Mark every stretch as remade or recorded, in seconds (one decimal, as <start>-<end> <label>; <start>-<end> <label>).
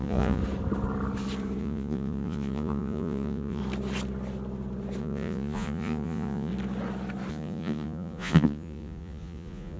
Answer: 0.0-0.4 remade; 0.4-1.6 recorded; 1.6-3.6 remade; 3.6-5.0 recorded; 5.0-6.5 remade; 6.5-7.3 recorded; 7.3-9.8 remade